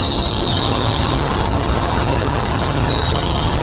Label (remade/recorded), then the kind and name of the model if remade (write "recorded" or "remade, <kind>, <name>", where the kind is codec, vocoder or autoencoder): remade, vocoder, HiFi-GAN